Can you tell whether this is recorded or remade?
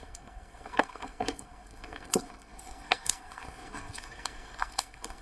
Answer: remade